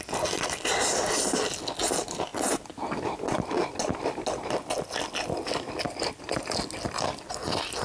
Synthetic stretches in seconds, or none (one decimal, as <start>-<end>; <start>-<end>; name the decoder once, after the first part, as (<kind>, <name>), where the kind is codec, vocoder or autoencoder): none